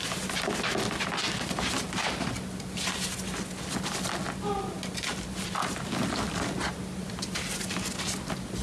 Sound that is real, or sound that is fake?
real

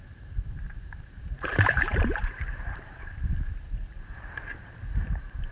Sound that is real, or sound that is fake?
fake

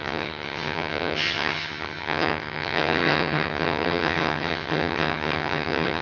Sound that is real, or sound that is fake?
fake